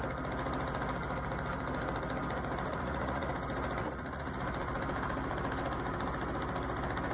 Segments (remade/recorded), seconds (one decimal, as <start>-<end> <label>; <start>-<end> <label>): 0.0-2.7 recorded; 2.7-3.3 remade; 3.3-3.8 recorded; 3.8-4.4 remade; 4.4-7.1 recorded